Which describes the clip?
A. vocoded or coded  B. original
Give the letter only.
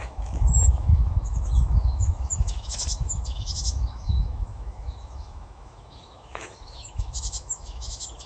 A